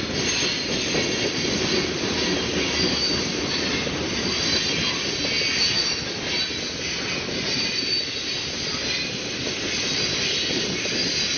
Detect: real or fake real